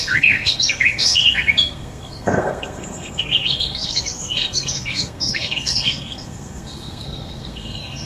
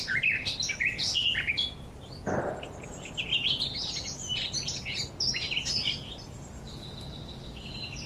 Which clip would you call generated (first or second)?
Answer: first